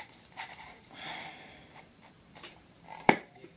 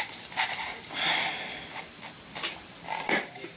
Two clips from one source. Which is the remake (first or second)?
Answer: first